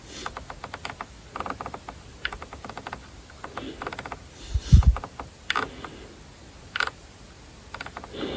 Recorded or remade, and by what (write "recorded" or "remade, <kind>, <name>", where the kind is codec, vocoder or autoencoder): recorded